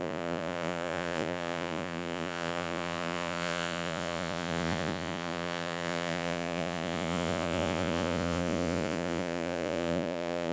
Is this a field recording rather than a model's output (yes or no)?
no